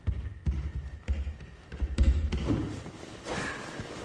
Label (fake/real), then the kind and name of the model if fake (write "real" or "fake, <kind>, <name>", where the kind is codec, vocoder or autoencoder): real